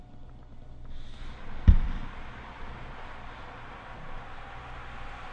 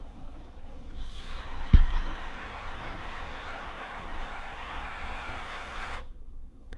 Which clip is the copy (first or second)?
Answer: second